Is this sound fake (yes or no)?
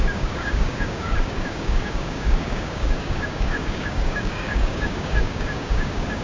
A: yes